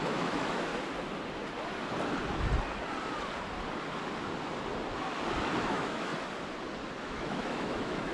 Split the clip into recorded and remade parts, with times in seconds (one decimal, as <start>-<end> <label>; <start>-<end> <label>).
0.0-0.7 remade; 0.7-5.6 recorded; 5.6-6.1 remade; 6.1-7.0 recorded; 7.0-8.1 remade